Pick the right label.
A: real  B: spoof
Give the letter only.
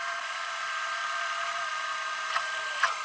A